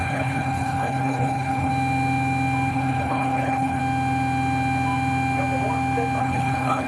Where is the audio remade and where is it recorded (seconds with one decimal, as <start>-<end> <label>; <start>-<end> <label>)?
0.0-1.7 remade; 1.7-2.7 recorded; 2.7-3.8 remade; 3.8-6.2 recorded; 6.2-6.9 remade